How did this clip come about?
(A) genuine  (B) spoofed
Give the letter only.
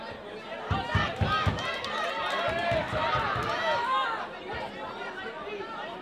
A